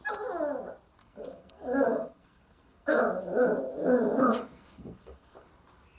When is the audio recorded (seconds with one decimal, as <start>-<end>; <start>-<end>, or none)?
0.0-1.0; 3.0-4.2; 5.5-6.0